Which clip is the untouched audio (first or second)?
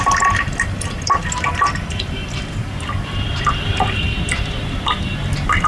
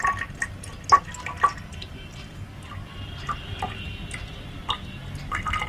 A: second